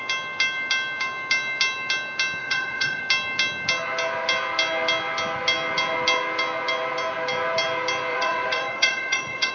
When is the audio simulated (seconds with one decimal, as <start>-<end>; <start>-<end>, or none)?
2.4-3.0; 8.1-9.5